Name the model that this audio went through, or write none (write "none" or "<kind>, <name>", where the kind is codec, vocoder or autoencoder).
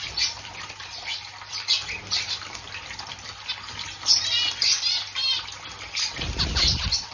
vocoder, BigVGAN v2